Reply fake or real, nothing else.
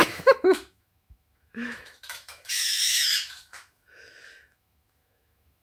fake